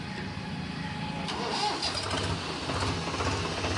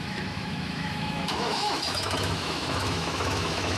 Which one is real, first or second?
first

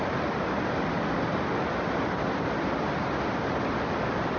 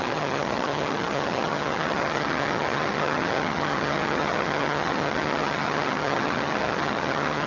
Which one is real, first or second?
first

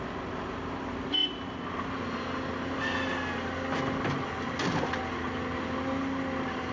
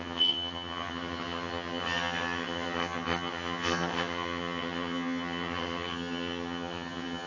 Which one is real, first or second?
first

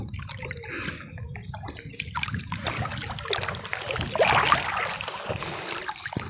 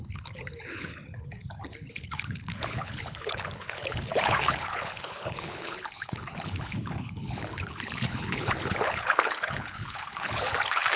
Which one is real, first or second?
first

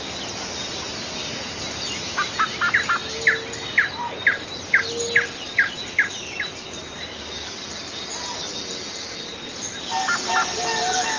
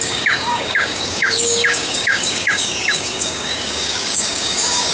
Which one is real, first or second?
first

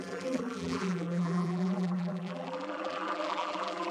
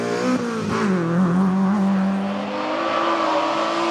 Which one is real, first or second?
second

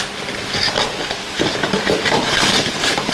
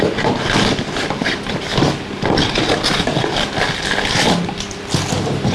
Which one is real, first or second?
second